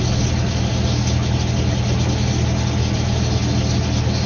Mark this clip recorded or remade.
recorded